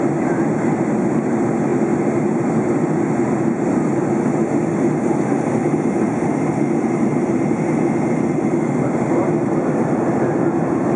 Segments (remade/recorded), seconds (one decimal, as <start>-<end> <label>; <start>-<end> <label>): 0.0-11.0 recorded